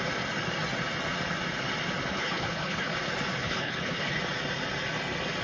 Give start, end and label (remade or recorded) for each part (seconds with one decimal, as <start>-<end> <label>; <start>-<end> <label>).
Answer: 0.0-2.1 recorded; 2.1-3.0 remade; 3.0-3.4 recorded; 3.4-4.2 remade; 4.2-5.4 recorded